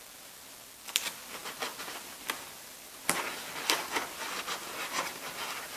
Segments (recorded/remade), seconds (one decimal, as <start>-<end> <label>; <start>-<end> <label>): 0.0-5.8 recorded